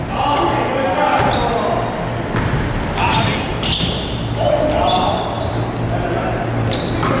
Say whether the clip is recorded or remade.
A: recorded